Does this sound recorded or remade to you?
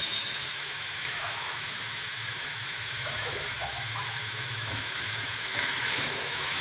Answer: remade